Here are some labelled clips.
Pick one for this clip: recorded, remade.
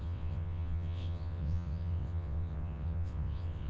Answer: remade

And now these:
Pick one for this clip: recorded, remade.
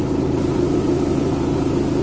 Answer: recorded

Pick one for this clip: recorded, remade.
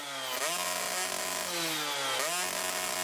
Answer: recorded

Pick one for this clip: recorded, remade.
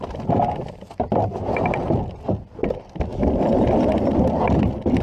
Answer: recorded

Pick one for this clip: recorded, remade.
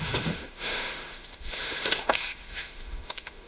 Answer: remade